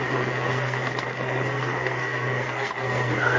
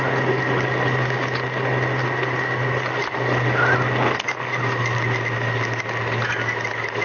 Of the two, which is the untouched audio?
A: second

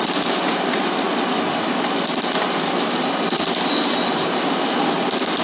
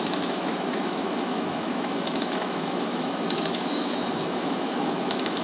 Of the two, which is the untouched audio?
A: first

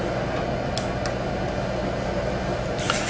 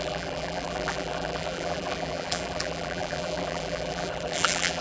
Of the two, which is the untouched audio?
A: first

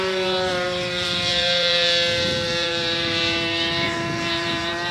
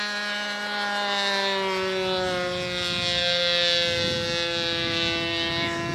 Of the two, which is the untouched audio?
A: second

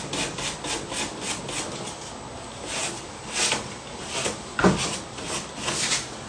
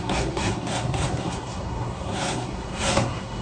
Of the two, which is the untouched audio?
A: first